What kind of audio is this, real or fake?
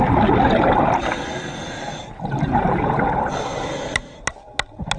real